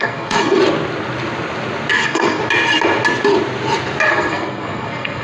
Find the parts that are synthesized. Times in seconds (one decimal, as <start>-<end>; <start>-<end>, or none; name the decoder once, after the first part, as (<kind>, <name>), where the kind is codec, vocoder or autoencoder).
0.0-0.6 (codec, SNAC); 1.9-2.4; 4.1-5.2